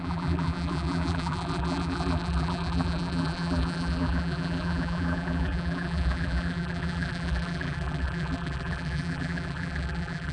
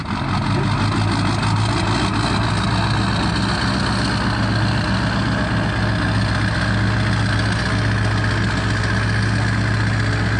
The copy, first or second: first